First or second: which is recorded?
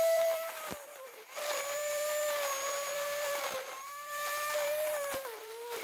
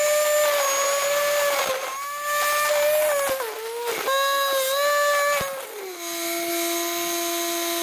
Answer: second